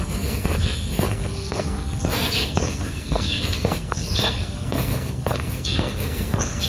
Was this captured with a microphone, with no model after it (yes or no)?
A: no